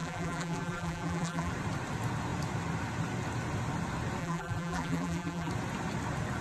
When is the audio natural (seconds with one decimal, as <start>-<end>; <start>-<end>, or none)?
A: 1.5-4.2; 5.5-6.4